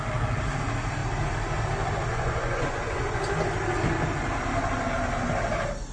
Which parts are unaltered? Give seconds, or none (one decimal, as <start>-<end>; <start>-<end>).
0.0-2.1; 3.2-5.9